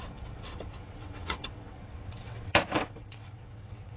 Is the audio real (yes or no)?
no